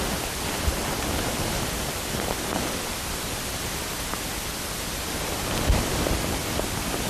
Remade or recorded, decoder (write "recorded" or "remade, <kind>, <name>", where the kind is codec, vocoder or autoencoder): remade, vocoder, BigVGAN v2